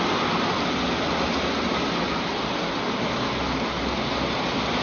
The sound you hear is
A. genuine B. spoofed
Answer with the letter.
A